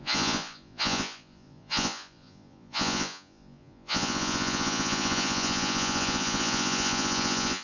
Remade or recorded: remade